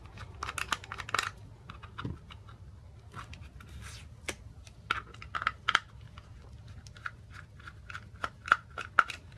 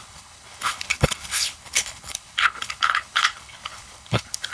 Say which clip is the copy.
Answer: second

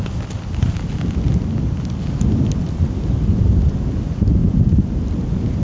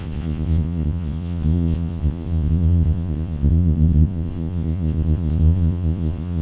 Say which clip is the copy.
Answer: second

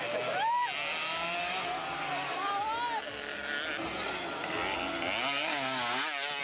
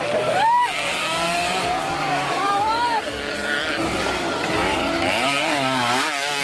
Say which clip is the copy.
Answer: second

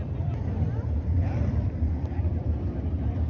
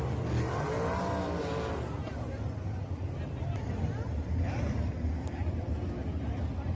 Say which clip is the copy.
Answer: first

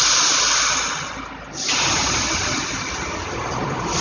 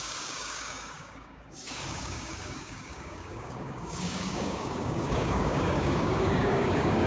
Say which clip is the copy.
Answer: second